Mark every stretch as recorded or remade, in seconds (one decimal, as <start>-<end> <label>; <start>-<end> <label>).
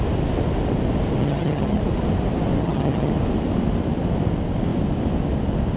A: 0.0-1.2 recorded; 1.2-1.8 remade; 1.8-2.6 recorded; 2.6-3.1 remade; 3.1-5.8 recorded